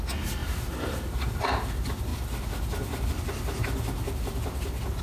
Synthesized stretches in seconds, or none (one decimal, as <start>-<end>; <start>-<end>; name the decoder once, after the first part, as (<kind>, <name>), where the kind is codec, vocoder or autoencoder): 0.4-1.7 (vocoder, BigVGAN v2)